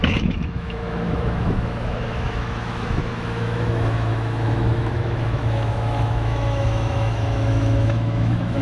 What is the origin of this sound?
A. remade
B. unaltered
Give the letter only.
A